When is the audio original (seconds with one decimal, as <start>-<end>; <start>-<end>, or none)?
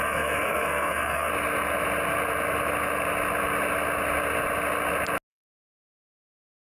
1.3-5.3